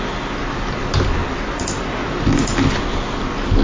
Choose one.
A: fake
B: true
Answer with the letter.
B